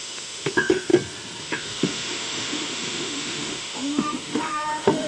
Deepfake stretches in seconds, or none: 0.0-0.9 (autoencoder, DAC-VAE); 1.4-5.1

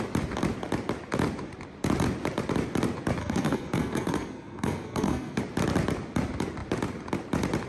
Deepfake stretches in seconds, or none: 3.2-5.4 (codec, SNAC)

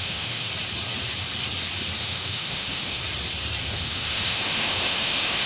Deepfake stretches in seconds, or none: 0.0-0.5 (autoencoder, DAC-VAE); 2.0-3.0; 3.6-5.5

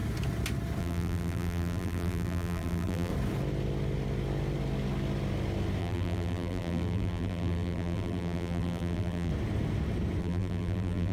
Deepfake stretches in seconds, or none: 0.8-3.1 (vocoder, BigVGAN v2); 5.8-9.3; 10.2-11.1

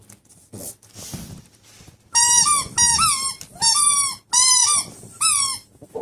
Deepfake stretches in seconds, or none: none